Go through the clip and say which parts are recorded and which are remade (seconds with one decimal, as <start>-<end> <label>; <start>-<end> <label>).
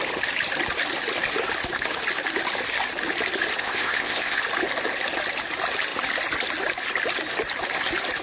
0.0-3.6 recorded; 3.6-4.4 remade; 4.4-8.2 recorded